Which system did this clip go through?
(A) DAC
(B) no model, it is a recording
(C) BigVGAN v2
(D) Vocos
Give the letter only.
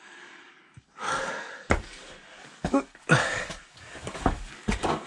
A